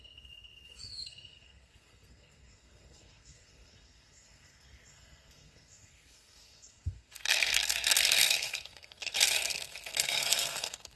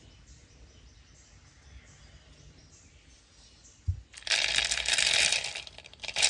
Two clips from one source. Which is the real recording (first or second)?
second